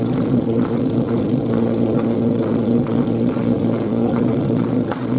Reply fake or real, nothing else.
fake